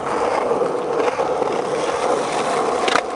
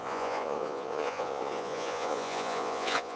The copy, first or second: second